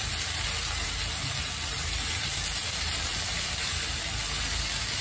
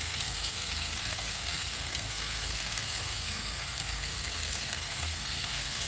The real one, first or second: first